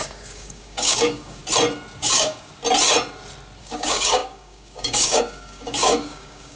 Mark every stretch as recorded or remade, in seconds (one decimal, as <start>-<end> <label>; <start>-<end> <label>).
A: 0.0-1.4 remade; 1.4-2.0 recorded; 2.0-2.5 remade; 2.5-3.6 recorded; 3.6-6.6 remade